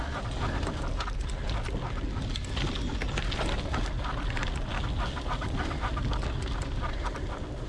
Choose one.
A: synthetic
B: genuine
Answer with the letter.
B